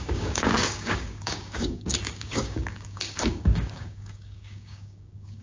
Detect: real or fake fake